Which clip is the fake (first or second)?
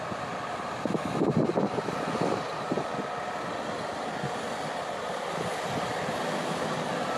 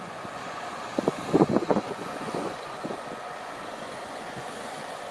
second